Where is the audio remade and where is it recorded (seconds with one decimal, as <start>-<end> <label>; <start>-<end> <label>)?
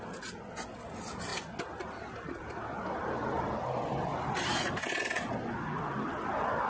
0.0-6.7 recorded